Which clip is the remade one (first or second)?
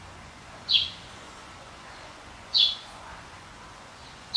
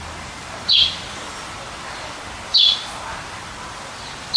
first